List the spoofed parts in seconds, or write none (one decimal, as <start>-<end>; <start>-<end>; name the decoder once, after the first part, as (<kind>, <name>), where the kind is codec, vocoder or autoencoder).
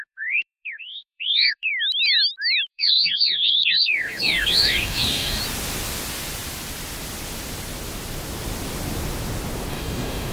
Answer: 0.0-1.7 (codec, DAC); 2.7-5.4; 9.7-10.3